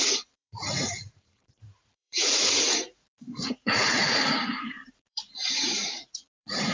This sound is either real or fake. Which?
fake